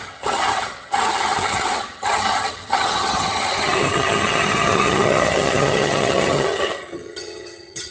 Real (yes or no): no